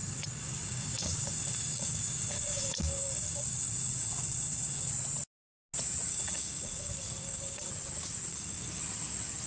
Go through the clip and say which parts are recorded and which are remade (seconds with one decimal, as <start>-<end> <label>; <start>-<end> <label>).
0.0-4.9 remade; 4.9-6.1 recorded; 6.1-7.7 remade; 7.7-8.3 recorded; 8.3-8.8 remade; 8.8-9.5 recorded